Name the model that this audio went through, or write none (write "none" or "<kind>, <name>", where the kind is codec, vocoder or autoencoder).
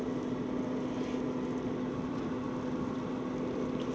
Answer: none